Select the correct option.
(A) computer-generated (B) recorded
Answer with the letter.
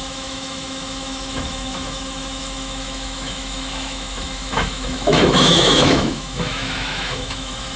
A